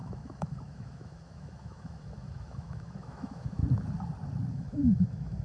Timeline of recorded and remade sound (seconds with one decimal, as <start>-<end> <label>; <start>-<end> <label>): 0.0-3.6 remade; 3.6-4.5 recorded; 4.5-5.4 remade